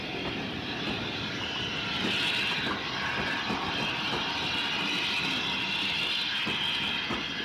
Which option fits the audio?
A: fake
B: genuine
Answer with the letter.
B